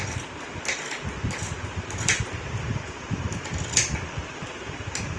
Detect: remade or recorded recorded